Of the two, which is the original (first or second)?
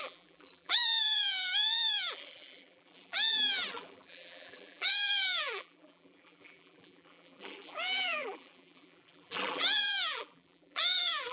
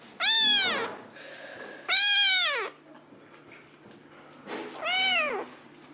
second